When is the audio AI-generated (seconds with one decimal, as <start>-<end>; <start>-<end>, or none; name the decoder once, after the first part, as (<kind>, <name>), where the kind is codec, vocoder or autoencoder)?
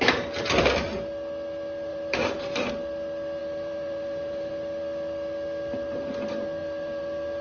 1.9-2.7 (vocoder, BigVGAN v2); 3.4-4.5; 6.6-7.4